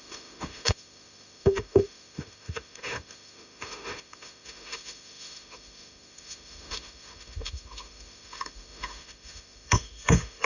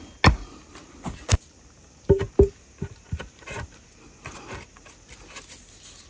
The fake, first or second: first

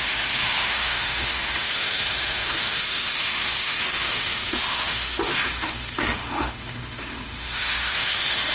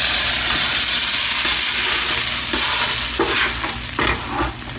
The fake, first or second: first